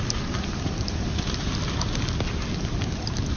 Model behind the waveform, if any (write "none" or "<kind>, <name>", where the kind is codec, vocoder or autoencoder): none